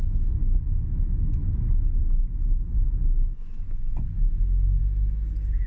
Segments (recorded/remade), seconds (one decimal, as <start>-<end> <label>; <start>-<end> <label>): 0.0-5.7 recorded